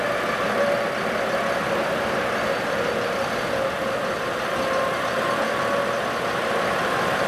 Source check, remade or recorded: recorded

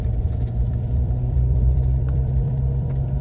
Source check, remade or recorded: remade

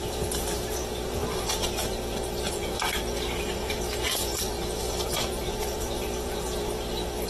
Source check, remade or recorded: remade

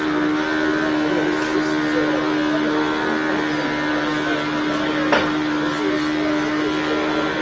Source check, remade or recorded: recorded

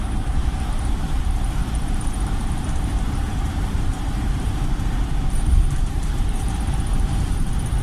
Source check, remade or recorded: remade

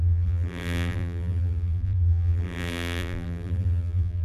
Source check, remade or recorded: remade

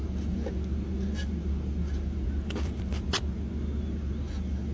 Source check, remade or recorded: remade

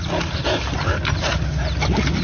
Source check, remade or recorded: recorded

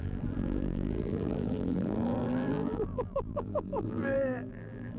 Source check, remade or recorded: remade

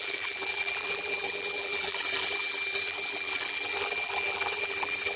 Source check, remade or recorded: remade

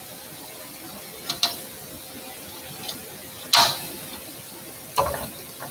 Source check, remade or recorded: recorded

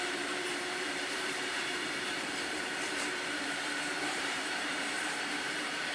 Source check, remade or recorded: remade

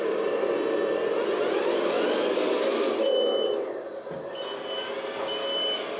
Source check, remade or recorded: recorded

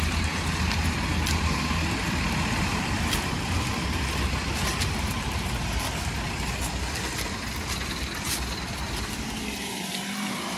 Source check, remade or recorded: recorded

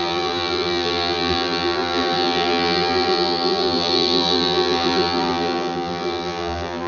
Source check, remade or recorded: remade